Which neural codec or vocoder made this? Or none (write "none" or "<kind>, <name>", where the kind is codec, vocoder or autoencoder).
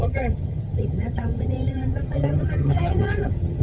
vocoder, HiFi-GAN